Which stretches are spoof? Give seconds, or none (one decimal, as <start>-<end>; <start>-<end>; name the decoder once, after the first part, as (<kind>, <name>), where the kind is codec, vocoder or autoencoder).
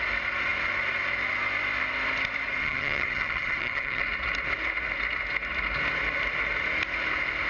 2.6-4.0 (vocoder, HiFi-GAN)